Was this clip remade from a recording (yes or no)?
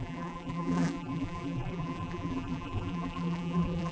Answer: yes